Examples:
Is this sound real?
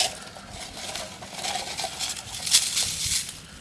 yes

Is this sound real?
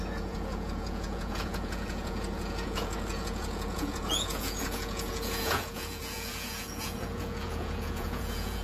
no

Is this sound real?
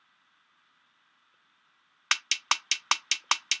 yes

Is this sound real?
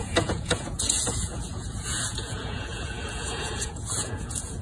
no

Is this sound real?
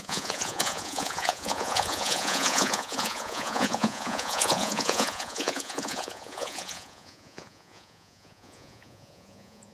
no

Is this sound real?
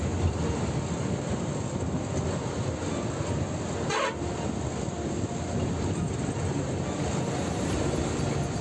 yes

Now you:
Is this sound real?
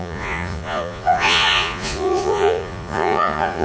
no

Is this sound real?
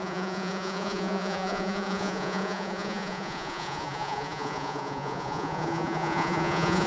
no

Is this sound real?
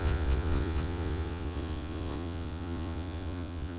no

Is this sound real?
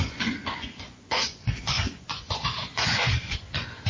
no